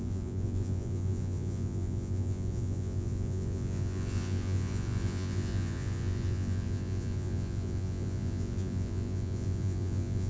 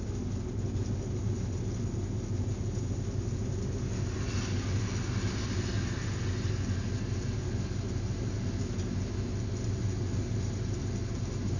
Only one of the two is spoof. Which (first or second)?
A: first